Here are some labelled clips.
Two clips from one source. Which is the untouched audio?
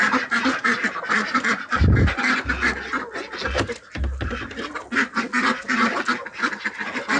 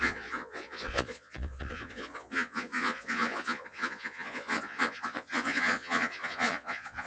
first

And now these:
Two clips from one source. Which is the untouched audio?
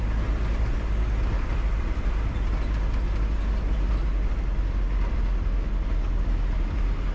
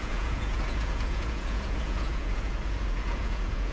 first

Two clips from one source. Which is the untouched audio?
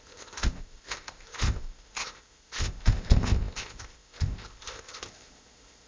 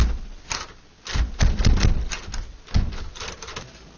second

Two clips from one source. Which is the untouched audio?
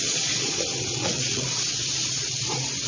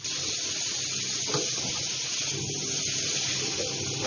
second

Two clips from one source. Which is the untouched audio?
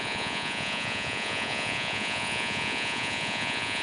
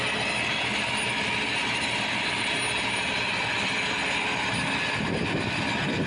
second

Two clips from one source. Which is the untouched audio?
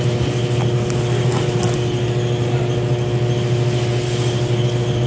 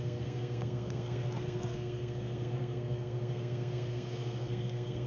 first